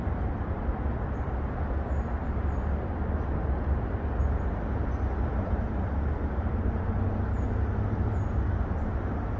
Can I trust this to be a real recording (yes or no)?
yes